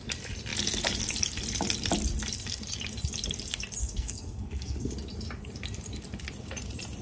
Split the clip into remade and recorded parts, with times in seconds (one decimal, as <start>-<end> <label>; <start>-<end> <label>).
0.0-3.8 recorded; 3.8-4.9 remade; 4.9-7.0 recorded